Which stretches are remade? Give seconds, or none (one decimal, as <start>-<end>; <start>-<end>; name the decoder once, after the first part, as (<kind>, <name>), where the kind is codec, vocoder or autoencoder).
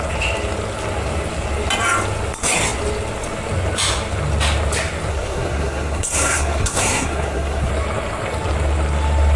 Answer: 5.1-7.7 (codec, SNAC)